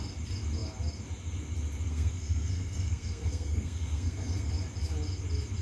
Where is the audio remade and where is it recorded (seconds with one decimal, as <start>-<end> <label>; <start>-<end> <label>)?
0.0-1.9 recorded; 1.9-4.5 remade; 4.5-5.6 recorded

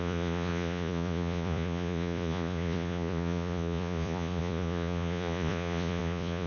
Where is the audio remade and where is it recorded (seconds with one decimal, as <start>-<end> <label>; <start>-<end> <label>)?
0.0-6.5 remade